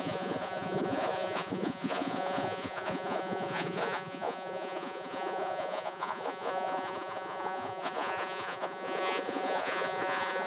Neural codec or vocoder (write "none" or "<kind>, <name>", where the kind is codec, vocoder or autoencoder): vocoder, Vocos